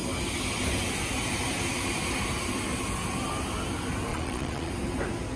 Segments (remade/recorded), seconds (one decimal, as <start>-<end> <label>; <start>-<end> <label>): 0.0-4.1 recorded; 4.1-4.7 remade; 4.7-5.4 recorded